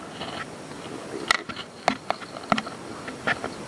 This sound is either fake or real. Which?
real